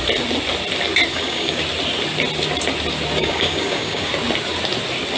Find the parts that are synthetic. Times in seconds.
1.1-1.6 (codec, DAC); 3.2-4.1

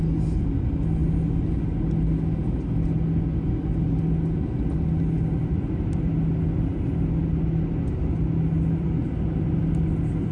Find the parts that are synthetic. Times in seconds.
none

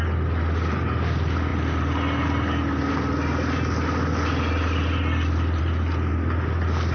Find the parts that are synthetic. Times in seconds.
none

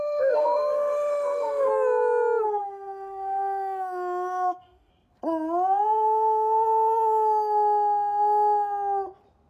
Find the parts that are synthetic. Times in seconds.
0.0-1.7 (autoencoder, DAC-VAE); 2.6-4.9